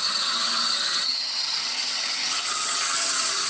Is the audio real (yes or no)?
no